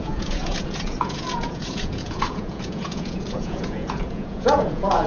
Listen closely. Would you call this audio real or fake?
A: fake